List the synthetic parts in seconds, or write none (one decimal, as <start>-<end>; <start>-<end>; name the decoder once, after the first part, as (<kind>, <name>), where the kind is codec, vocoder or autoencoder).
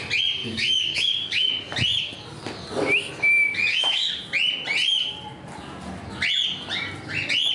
0.4-1.5 (codec, DAC); 3.7-4.2